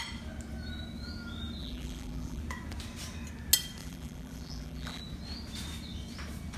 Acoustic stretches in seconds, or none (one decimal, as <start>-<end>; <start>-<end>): 0.0-1.6; 2.4-3.8; 5.0-6.6

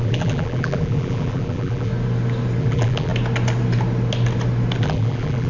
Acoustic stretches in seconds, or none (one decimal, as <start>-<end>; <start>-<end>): 1.9-2.6; 3.1-4.8

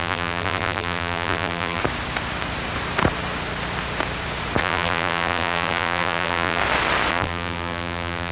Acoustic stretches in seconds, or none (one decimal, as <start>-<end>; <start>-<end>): 1.8-4.6; 6.6-7.1

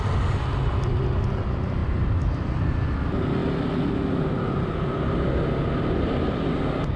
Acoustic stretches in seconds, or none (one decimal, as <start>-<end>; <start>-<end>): 0.0-1.8; 2.3-7.0

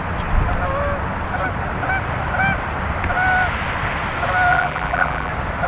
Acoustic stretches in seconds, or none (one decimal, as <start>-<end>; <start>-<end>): 0.0-4.5; 5.3-5.7

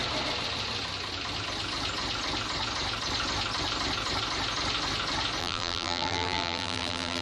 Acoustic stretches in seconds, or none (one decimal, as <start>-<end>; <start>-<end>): 0.0-5.4